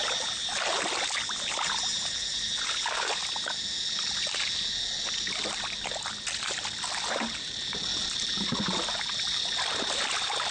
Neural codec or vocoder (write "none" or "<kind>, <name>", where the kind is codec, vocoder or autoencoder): none